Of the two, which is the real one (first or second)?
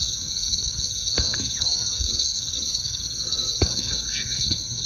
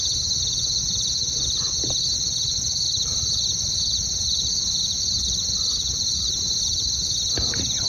second